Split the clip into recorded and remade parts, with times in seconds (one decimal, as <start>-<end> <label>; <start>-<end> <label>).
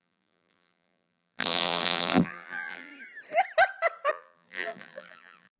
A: 0.0-2.9 remade; 2.9-4.1 recorded; 4.1-5.6 remade